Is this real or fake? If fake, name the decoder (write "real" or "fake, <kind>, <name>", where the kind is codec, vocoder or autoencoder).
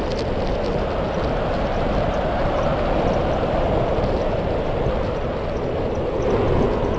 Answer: real